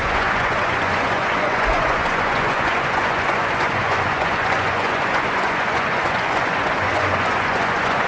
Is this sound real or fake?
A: fake